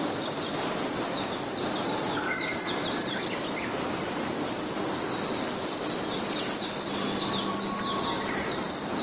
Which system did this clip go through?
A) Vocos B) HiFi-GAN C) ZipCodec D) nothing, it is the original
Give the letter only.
D